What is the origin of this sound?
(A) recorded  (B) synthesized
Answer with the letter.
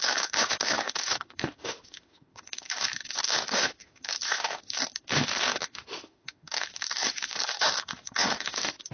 B